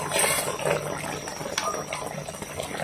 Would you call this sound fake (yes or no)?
no